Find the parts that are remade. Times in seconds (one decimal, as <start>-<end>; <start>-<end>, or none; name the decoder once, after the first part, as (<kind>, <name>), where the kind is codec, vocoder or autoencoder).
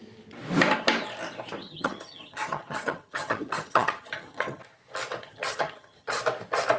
1.6-4.6 (vocoder, HiFi-GAN); 5.2-6.2